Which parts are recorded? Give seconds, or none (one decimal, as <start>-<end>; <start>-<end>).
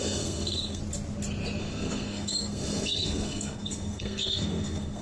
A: 0.8-1.6